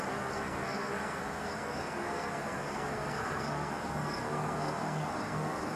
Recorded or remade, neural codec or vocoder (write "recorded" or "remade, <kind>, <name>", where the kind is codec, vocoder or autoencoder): remade, codec, SNAC